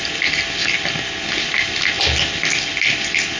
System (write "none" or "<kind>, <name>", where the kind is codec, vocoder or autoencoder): none